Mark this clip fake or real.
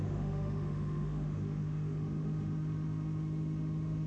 fake